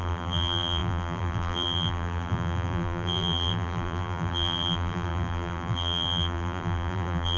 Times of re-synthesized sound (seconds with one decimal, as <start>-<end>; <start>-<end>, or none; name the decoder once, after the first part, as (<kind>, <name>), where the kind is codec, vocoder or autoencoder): 0.0-7.4 (vocoder, BigVGAN v2)